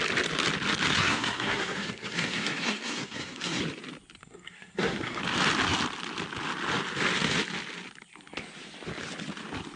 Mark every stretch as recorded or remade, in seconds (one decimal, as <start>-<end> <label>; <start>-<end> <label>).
0.0-0.9 recorded; 0.9-3.6 remade; 3.6-4.2 recorded; 4.2-5.2 remade; 5.2-9.8 recorded